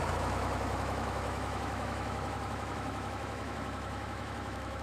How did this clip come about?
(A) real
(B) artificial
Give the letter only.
B